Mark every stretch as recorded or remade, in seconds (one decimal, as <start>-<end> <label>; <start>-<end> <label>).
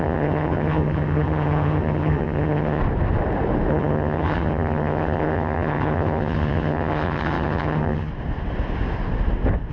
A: 0.0-2.8 remade; 2.8-3.7 recorded; 3.7-8.1 remade; 8.1-9.7 recorded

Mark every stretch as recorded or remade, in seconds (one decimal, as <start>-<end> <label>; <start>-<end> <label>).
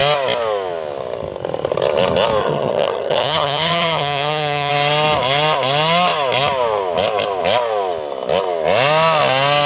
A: 0.0-2.4 recorded; 2.4-4.7 remade; 4.7-9.7 recorded